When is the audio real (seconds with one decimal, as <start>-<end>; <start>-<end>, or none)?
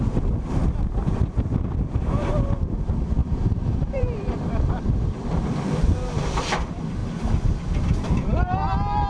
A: 0.0-3.2; 5.7-9.1